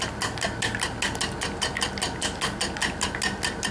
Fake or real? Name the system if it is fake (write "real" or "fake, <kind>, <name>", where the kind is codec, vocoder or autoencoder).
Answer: real